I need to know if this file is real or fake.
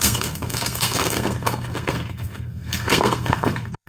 fake